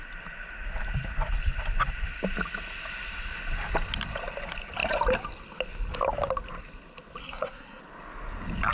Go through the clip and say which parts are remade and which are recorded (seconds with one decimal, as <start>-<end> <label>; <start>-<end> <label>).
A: 0.0-7.2 recorded; 7.2-7.8 remade; 7.8-8.7 recorded